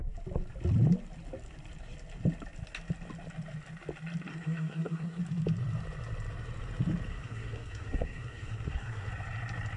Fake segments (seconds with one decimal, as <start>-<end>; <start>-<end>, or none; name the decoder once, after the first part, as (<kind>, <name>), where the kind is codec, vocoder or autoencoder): 4.3-5.2 (codec, SNAC); 7.1-9.1